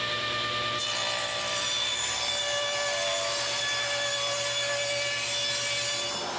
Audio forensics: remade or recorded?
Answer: recorded